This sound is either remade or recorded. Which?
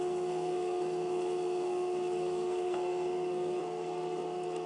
remade